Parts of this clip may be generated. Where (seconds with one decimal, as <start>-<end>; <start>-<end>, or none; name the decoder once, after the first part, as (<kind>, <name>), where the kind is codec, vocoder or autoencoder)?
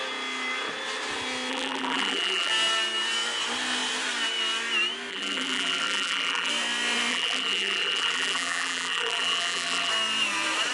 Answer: 1.5-2.5 (vocoder, BigVGAN v2); 5.1-6.5; 7.1-9.9